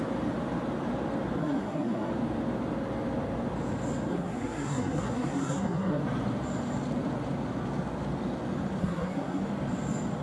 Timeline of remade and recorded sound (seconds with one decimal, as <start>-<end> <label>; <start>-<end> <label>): 0.0-1.4 recorded; 1.4-2.1 remade; 2.1-4.1 recorded; 4.1-6.0 remade; 6.0-8.8 recorded; 8.8-9.4 remade; 9.4-10.2 recorded